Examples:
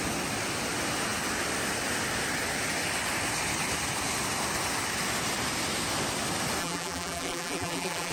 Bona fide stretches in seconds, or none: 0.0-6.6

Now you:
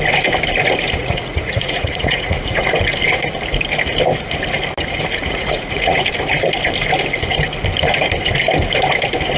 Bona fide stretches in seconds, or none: 0.0-1.0; 2.7-5.2; 6.1-9.4

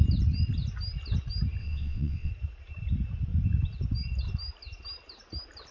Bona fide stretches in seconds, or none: 0.0-1.6; 2.3-5.7

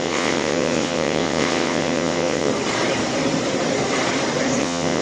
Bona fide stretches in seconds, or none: 2.5-4.6

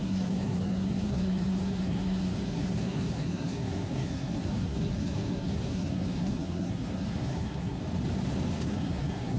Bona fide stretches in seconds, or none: 7.8-8.7

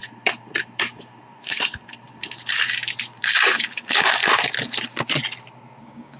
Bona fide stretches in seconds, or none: 0.0-3.2; 4.2-5.8

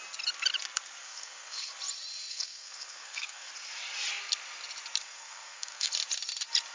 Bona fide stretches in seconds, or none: 0.0-1.0; 1.7-2.3; 3.5-5.0; 5.9-6.7

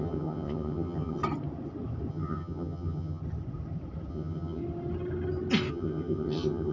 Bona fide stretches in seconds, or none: 1.2-2.1; 3.2-4.1; 4.6-5.7